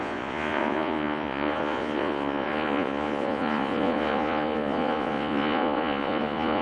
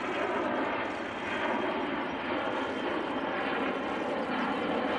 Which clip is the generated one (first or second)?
first